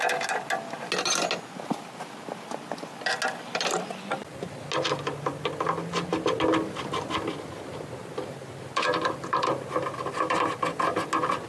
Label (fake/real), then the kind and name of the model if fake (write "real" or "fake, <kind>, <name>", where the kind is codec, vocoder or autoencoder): real